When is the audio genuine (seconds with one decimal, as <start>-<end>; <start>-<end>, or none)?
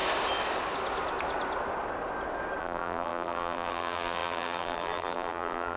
0.0-2.6